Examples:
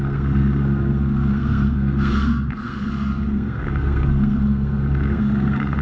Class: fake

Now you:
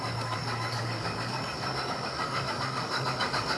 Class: fake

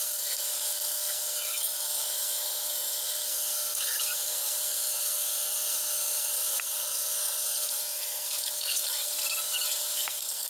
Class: fake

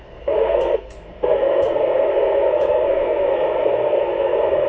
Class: fake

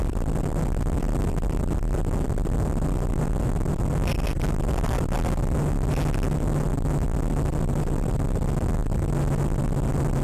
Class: real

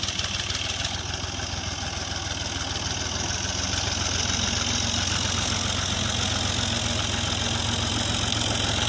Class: real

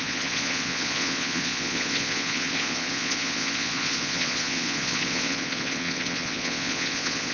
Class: fake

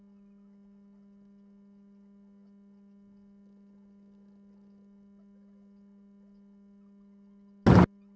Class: real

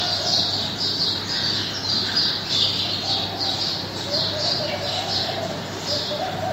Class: real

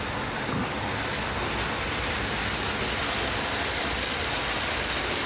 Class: real